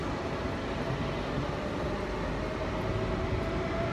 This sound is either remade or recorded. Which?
recorded